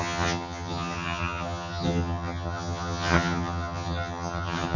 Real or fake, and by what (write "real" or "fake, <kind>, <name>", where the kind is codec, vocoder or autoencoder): fake, vocoder, HiFi-GAN